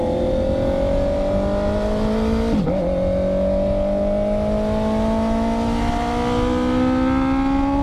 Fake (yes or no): no